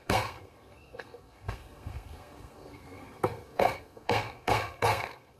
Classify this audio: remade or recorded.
remade